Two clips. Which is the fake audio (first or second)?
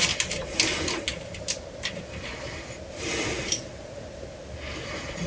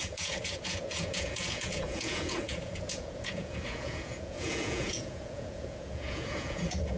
second